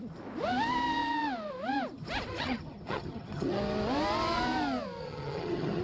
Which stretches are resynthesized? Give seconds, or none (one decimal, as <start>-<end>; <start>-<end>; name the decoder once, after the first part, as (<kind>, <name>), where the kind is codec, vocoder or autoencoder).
2.3-3.6 (vocoder, HiFi-GAN); 5.0-5.8